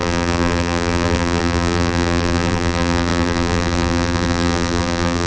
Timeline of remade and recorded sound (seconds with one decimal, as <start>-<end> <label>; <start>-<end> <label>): 0.0-5.3 remade